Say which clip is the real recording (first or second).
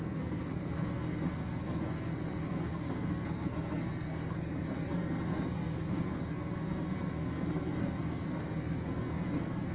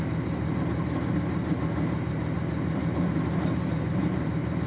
second